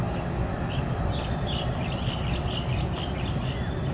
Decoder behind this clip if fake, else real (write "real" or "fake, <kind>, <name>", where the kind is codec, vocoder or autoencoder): real